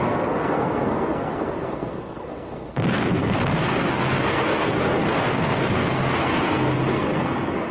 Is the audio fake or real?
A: fake